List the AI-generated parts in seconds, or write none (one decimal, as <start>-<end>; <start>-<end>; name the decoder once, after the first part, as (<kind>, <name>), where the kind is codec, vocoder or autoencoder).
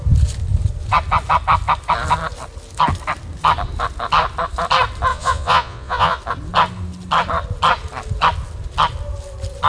5.1-6.2 (vocoder, Vocos)